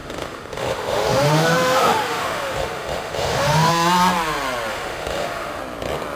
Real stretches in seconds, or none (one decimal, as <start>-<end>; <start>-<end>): 3.7-4.7; 5.6-6.2